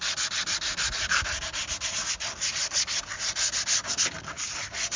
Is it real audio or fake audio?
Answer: real